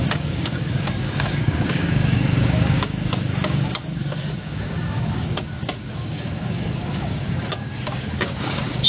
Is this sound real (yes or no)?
no